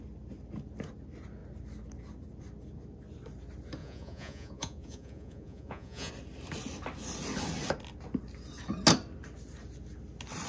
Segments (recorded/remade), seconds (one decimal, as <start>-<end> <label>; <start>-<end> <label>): 0.0-3.8 recorded; 3.8-6.1 remade; 6.1-10.5 recorded